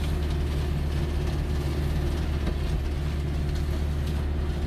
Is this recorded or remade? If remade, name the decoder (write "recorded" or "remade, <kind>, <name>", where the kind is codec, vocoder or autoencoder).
recorded